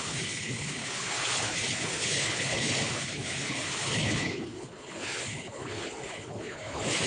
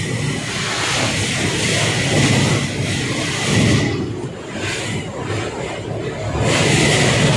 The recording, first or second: second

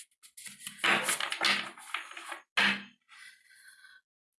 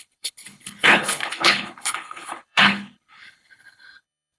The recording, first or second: first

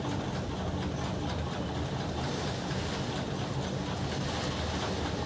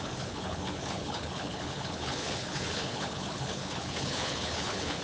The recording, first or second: first